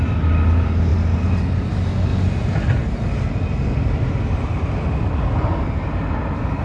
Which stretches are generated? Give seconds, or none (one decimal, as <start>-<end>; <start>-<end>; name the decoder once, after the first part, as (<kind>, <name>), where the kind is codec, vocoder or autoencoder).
none